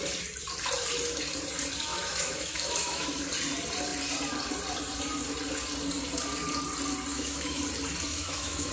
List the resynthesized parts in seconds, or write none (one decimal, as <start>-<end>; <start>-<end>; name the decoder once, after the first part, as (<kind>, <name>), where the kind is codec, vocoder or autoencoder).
1.9-3.3 (autoencoder, DAC-VAE); 7.1-7.6; 8.1-8.7

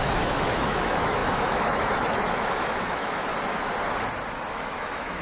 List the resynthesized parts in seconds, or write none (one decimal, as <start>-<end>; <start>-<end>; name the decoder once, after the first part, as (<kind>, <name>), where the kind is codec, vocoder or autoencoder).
0.0-3.3 (autoencoder, DAC-VAE); 4.5-5.2